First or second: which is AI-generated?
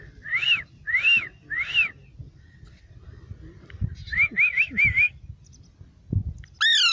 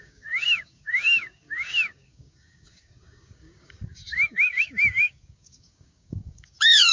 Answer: second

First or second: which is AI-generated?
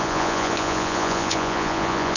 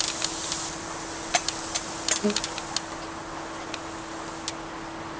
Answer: first